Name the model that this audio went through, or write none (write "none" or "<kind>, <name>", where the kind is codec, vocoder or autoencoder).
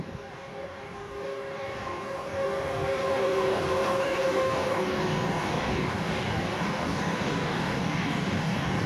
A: codec, DAC